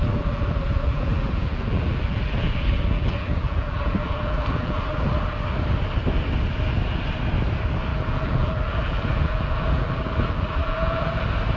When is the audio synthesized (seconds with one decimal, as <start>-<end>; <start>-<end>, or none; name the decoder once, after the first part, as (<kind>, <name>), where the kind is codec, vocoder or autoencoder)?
0.0-5.1 (vocoder, BigVGAN v2); 7.9-11.2